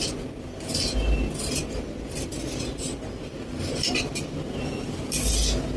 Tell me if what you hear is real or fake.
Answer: real